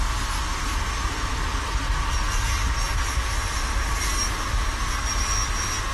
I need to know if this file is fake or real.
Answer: real